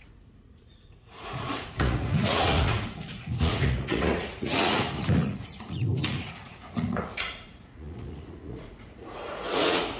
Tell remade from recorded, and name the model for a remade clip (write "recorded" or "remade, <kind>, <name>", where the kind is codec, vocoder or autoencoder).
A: remade, vocoder, Vocos